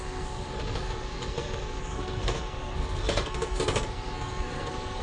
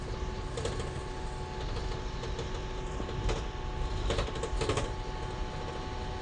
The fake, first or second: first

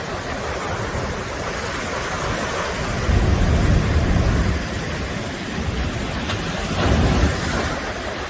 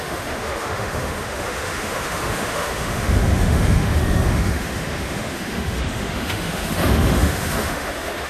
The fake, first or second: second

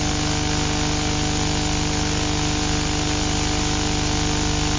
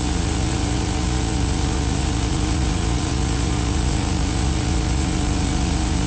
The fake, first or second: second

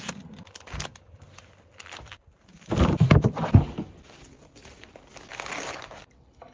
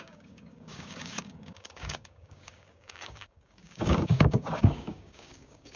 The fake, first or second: second